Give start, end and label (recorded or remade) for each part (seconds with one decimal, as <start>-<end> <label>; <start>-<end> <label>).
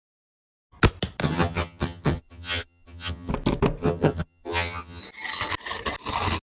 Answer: 0.0-1.2 recorded; 1.2-3.3 remade; 3.3-3.8 recorded; 3.8-5.0 remade; 5.0-6.6 recorded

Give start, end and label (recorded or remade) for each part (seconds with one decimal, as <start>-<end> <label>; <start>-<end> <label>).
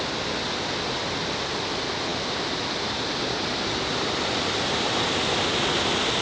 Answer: 0.0-6.2 recorded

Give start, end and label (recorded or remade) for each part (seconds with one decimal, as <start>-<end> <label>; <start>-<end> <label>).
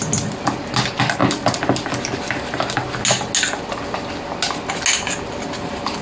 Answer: 0.0-6.0 recorded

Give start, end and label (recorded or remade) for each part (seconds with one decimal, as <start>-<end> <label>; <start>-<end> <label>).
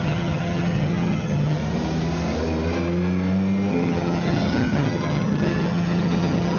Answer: 0.0-1.6 remade; 1.6-3.7 recorded; 3.7-6.6 remade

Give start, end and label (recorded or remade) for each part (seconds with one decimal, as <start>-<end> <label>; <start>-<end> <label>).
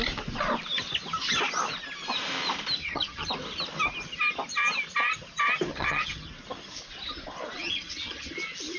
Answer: 0.0-2.8 recorded; 2.8-3.3 remade; 3.3-5.7 recorded; 5.7-6.3 remade; 6.3-7.6 recorded; 7.6-8.3 remade; 8.3-8.8 recorded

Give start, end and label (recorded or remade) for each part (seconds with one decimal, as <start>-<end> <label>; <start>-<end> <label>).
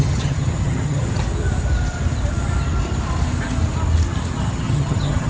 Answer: 0.0-1.2 remade; 1.2-4.4 recorded; 4.4-5.3 remade